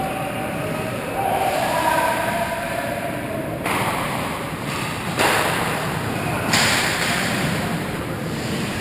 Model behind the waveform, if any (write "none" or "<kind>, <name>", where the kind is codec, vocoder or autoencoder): vocoder, BigVGAN v2